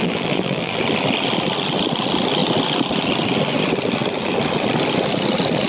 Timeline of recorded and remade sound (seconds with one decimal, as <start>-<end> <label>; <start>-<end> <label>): 0.0-0.8 remade; 0.8-5.7 recorded